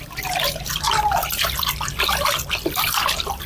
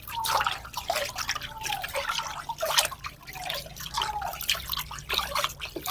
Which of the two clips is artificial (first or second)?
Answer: first